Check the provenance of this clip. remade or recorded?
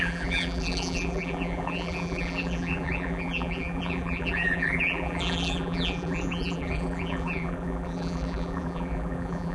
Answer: remade